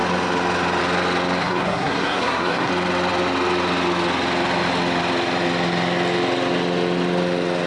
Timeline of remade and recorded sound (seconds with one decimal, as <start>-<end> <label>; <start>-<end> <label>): 0.0-1.4 recorded; 1.4-2.7 remade; 2.7-7.7 recorded